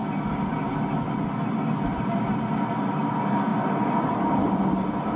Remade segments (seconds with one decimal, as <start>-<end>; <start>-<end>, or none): none